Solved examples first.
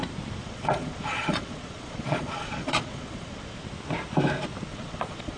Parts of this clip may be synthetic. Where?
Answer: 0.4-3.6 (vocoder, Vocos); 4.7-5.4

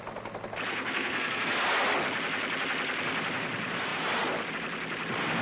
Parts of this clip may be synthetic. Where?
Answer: 0.7-1.5 (codec, SNAC)

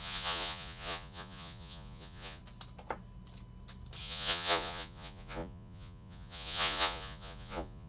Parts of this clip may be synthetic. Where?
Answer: 0.0-2.4 (vocoder, Vocos); 4.0-7.9

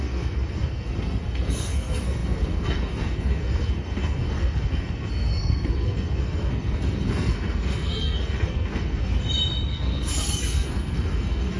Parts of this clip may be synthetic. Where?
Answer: 0.0-9.1 (codec, SNAC); 9.7-11.6